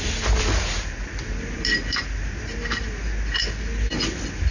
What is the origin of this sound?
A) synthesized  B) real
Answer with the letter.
B